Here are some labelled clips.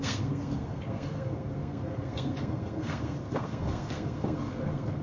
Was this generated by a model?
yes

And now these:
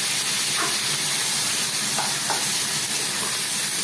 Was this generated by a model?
no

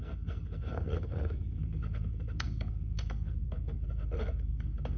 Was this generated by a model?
yes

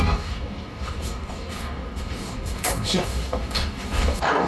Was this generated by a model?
yes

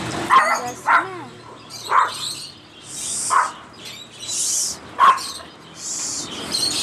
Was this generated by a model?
no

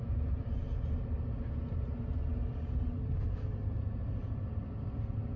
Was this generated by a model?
no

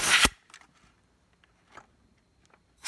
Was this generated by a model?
no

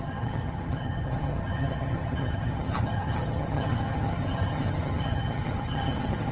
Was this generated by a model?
yes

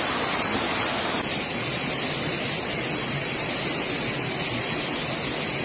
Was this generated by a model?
no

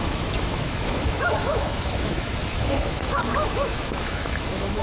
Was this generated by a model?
yes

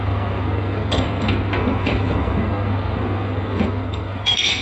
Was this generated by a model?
yes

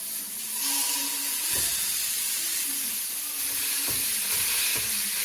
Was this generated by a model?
yes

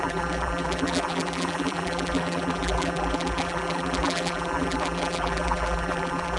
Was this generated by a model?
yes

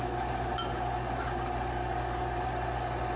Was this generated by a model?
no